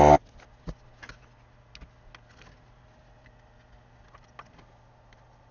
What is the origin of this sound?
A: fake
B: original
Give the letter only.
B